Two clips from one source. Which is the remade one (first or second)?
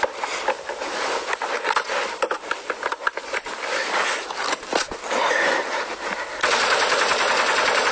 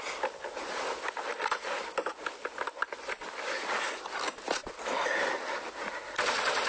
first